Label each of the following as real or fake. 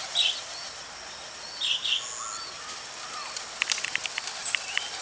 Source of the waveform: real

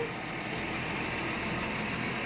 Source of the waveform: real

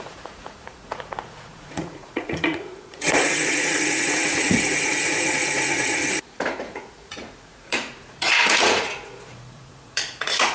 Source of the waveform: fake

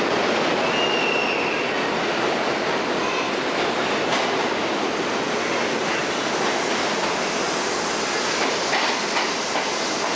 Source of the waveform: real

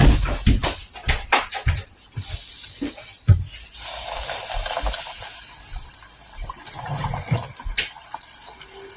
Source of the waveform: real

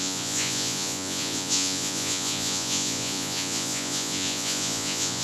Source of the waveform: fake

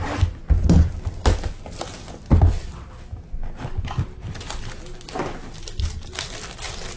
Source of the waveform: real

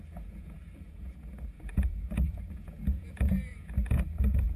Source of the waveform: fake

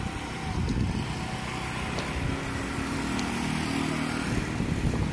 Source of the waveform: real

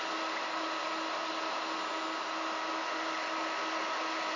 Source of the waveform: real